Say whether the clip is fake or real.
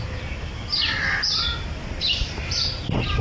real